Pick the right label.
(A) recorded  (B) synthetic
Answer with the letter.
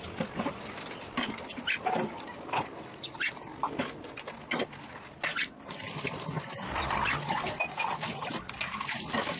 A